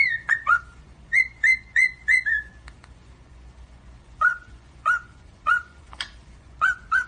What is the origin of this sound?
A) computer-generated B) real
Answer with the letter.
A